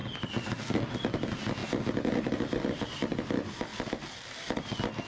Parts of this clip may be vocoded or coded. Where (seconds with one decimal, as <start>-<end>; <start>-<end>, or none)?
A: none